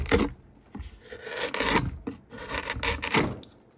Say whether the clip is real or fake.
real